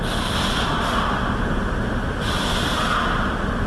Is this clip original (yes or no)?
yes